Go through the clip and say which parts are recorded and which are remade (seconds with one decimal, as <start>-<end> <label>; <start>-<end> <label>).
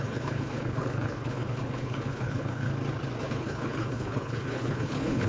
0.0-2.7 remade; 2.7-3.2 recorded; 3.2-5.3 remade